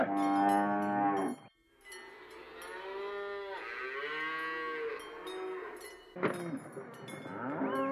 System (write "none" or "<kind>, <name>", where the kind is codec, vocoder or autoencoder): none